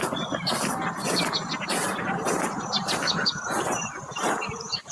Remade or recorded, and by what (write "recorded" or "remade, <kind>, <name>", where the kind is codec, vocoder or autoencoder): recorded